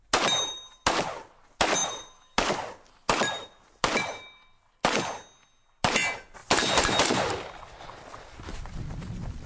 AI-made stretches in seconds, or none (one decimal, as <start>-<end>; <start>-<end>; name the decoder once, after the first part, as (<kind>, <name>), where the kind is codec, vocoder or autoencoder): none

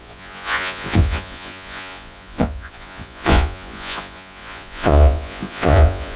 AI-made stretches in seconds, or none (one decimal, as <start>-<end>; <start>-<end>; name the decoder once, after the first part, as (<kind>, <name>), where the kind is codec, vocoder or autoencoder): 0.0-6.2 (vocoder, Vocos)

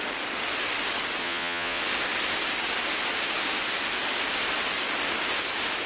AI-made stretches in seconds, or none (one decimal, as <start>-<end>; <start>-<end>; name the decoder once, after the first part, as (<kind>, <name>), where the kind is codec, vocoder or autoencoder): 1.2-1.8 (vocoder, Vocos)

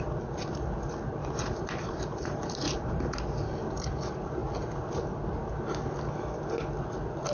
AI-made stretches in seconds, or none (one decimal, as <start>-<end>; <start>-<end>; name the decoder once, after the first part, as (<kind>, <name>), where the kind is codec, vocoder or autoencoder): 1.2-2.9 (vocoder, BigVGAN v2)

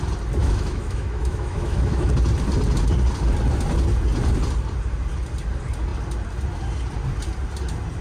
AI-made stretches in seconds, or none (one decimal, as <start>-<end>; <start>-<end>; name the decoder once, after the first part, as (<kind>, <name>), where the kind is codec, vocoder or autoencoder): 0.4-2.1 (autoencoder, DAC-VAE)